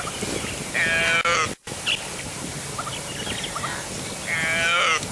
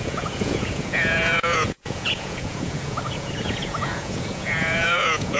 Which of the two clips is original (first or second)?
first